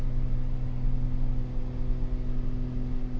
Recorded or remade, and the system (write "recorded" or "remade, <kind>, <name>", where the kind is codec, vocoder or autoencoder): recorded